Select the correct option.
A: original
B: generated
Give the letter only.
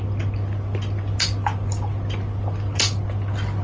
A